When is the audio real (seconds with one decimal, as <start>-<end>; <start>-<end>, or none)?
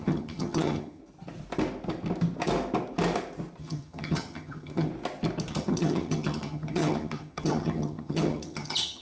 1.0-3.6; 4.9-5.5